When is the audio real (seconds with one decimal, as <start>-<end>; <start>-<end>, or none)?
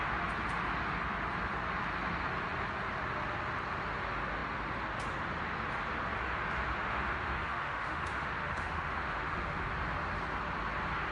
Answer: 0.0-6.9; 9.7-11.1